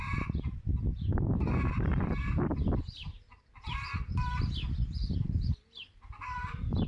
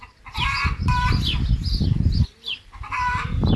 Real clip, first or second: second